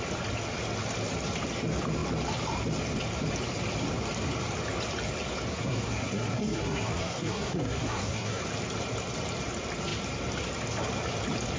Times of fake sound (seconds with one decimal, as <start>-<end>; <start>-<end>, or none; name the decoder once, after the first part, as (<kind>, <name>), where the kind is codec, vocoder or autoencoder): 5.5-8.4 (codec, SNAC)